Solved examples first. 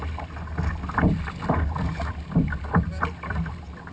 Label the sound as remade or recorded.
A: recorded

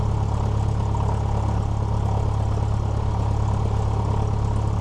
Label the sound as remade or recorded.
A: recorded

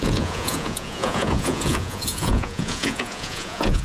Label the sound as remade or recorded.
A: remade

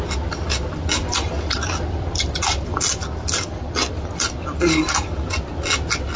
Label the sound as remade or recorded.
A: recorded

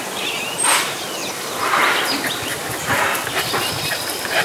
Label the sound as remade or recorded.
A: recorded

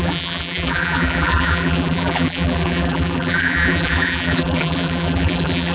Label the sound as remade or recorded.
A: remade